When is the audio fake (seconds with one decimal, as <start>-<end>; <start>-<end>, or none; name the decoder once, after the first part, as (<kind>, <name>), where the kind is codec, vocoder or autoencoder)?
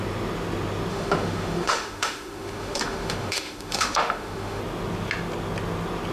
0.9-4.6 (autoencoder, DAC-VAE)